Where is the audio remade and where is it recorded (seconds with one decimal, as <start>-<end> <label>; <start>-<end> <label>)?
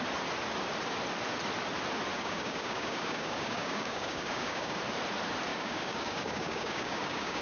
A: 0.0-2.1 recorded; 2.1-4.8 remade; 4.8-5.5 recorded; 5.5-7.4 remade